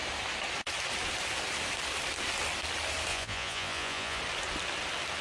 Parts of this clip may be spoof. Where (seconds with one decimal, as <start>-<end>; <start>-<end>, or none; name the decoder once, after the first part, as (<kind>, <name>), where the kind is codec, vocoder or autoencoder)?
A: 3.1-4.2 (vocoder, Vocos)